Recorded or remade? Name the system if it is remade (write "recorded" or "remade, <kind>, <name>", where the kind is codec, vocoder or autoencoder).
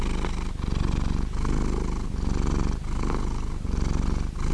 recorded